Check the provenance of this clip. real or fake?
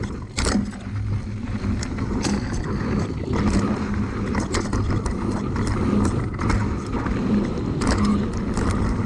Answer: real